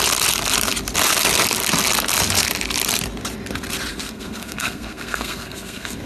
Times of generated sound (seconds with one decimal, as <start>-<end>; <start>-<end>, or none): 3.9-6.1